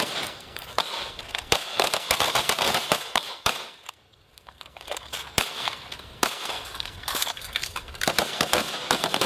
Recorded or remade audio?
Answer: remade